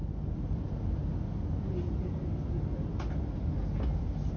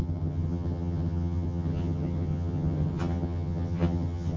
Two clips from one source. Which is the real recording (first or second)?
first